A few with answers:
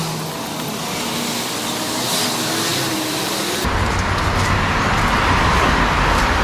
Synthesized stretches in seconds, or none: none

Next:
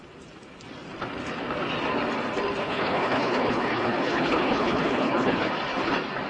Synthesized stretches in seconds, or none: 2.6-5.5 (codec, HILCodec)

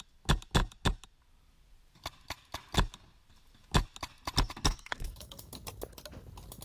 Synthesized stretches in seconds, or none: 4.7-5.5 (autoencoder, DAC-VAE)

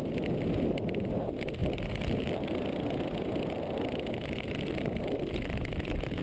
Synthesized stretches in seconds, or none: none